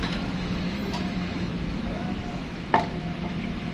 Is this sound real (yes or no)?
no